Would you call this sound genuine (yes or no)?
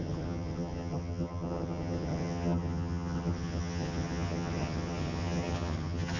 no